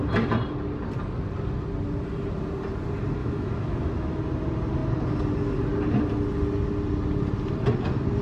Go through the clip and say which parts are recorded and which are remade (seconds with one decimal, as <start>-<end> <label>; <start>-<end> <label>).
0.0-3.2 recorded; 3.2-4.2 remade; 4.2-8.2 recorded